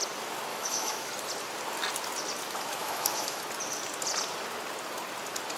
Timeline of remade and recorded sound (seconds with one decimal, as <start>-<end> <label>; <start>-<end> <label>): 0.0-0.5 recorded; 0.5-1.1 remade; 1.1-2.8 recorded; 2.8-3.4 remade; 3.4-5.6 recorded